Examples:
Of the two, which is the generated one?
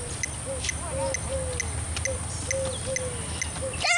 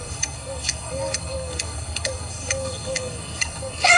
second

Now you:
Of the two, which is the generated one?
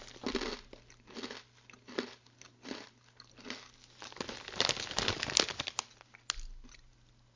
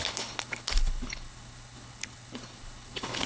second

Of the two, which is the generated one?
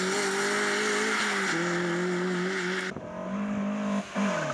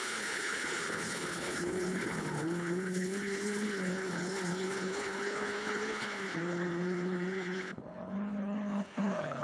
second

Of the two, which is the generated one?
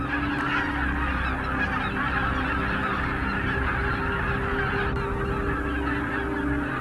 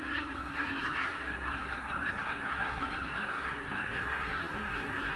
second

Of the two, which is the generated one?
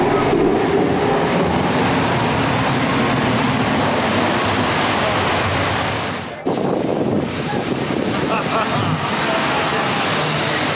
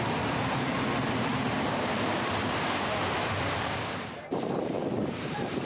second